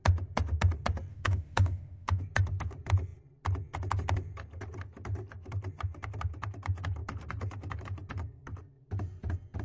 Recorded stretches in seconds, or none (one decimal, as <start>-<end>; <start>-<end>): 0.0-1.1; 2.2-9.6